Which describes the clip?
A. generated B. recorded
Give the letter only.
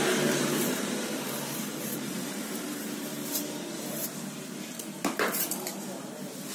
A